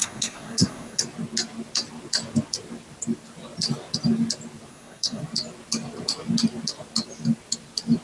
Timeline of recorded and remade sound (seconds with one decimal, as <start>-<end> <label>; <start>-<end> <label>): 0.0-1.0 remade; 1.0-4.7 recorded; 4.7-5.2 remade; 5.2-8.0 recorded